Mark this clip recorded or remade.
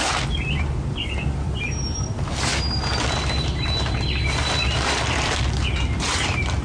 recorded